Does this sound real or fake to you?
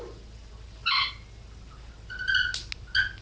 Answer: real